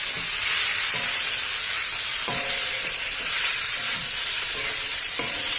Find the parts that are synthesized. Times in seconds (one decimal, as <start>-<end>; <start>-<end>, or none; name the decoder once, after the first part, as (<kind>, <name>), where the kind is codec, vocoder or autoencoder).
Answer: 2.1-5.6 (vocoder, Vocos)